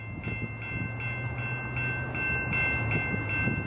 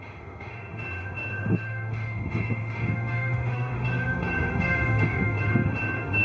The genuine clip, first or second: first